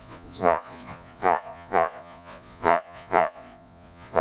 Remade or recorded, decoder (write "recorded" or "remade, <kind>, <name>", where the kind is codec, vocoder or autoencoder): remade, vocoder, Vocos